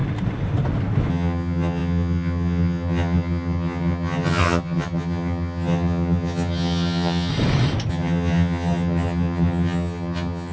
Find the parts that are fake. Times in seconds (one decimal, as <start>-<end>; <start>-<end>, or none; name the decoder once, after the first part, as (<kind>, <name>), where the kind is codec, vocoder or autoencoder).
1.1-7.3 (vocoder, HiFi-GAN); 7.9-10.5